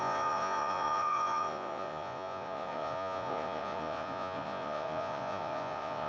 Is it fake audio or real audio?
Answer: fake